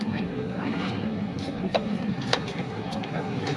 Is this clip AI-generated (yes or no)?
yes